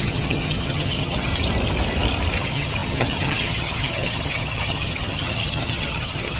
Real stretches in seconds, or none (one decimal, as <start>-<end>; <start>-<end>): 1.3-2.4